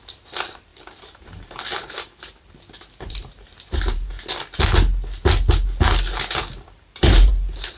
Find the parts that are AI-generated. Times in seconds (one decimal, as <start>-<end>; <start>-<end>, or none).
0.0-4.1; 7.0-7.8